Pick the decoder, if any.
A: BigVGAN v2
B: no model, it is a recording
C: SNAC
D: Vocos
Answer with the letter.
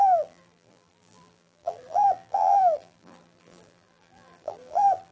A